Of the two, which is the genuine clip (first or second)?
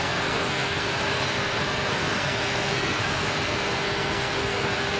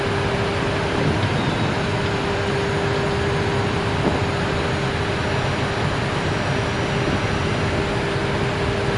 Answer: second